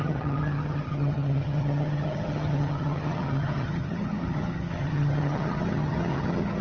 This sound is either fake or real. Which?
fake